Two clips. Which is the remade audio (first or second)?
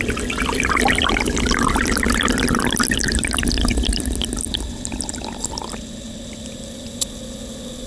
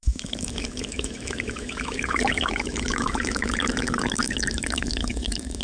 second